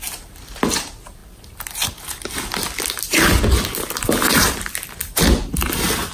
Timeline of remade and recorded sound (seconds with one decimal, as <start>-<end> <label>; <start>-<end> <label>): 0.0-6.1 recorded